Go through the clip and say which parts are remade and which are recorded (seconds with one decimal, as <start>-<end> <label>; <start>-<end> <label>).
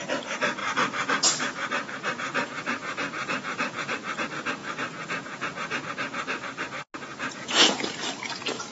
0.0-2.3 recorded; 2.3-3.9 remade; 3.9-4.6 recorded; 4.6-5.8 remade; 5.8-7.1 recorded; 7.1-8.0 remade; 8.0-8.7 recorded